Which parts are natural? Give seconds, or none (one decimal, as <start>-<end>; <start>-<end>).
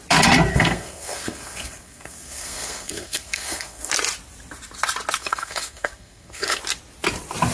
0.0-0.5; 3.9-5.2; 6.6-7.5